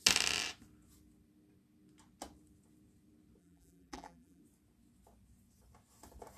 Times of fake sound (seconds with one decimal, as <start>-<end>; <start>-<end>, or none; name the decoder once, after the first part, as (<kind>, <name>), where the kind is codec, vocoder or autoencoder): 3.4-4.4 (vocoder, BigVGAN v2)